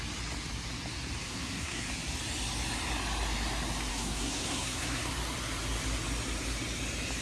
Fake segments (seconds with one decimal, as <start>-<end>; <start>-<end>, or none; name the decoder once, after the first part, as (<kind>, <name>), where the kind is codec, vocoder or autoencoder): 1.2-1.9 (codec, SNAC); 3.9-5.1